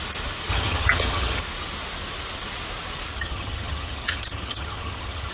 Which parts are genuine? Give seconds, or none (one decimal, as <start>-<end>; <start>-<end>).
0.0-0.5; 1.4-3.1